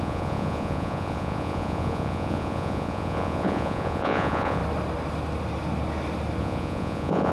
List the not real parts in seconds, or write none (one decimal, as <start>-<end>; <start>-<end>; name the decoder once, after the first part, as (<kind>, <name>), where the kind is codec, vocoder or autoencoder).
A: 0.0-4.6 (vocoder, Vocos); 6.4-7.3